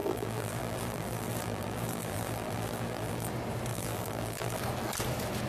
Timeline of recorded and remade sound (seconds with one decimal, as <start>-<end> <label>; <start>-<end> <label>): 0.0-3.3 remade; 3.3-3.7 recorded; 3.7-4.6 remade; 4.6-5.5 recorded